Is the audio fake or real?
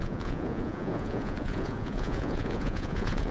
fake